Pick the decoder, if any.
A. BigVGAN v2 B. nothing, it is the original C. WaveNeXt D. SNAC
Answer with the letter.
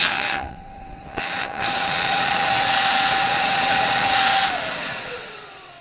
C